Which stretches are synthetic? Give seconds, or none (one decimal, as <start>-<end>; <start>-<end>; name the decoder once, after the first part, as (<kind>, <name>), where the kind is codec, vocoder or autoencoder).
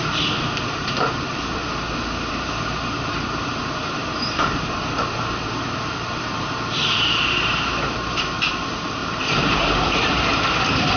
0.0-1.6 (vocoder, BigVGAN v2); 2.3-11.0